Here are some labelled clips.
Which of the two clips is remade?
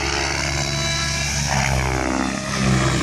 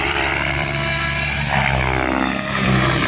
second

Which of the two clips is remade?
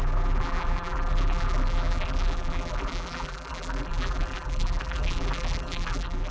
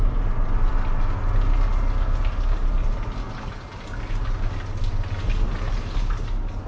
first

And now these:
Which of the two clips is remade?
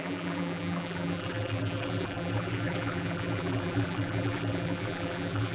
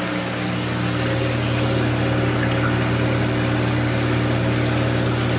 first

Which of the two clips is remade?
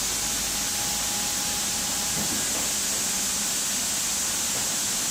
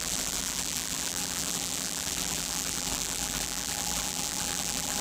second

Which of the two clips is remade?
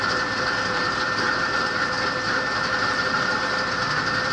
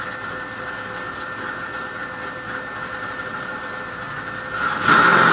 first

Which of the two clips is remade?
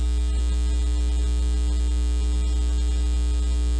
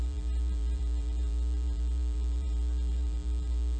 second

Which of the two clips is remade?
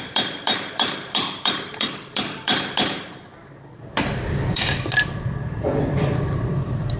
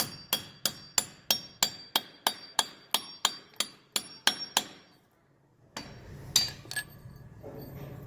first